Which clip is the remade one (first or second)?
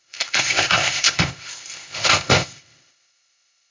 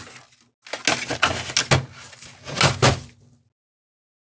first